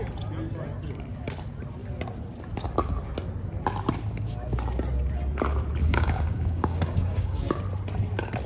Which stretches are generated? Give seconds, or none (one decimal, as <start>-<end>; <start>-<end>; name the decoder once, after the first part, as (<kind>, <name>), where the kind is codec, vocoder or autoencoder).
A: 5.8-7.6 (codec, DAC)